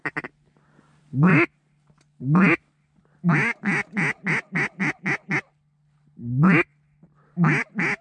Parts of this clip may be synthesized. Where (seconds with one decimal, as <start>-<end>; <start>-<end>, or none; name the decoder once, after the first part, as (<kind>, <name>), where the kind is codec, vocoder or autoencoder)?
none